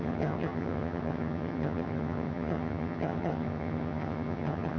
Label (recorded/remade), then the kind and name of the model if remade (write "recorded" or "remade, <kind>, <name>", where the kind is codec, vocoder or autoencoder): remade, vocoder, HiFi-GAN